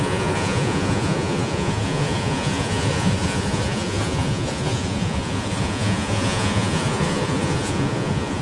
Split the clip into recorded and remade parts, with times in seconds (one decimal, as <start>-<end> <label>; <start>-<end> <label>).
0.0-8.4 remade